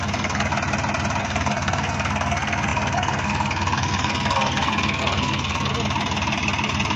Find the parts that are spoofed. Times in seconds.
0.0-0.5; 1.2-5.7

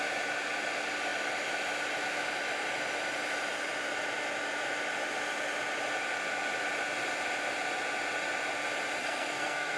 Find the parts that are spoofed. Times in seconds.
9.0-9.8

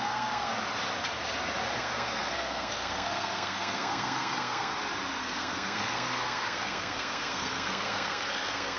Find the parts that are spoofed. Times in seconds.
0.0-0.5; 1.8-4.7; 5.2-8.8

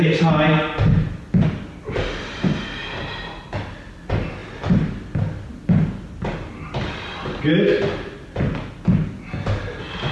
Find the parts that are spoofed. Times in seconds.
none